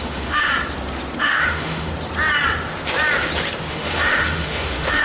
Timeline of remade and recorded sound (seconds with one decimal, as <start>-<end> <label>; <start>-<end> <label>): 0.0-0.5 remade; 0.5-1.2 recorded; 1.2-1.9 remade; 1.9-3.7 recorded; 3.7-5.0 remade